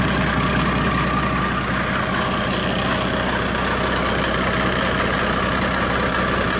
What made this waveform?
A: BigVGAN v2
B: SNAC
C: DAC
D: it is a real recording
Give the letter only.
D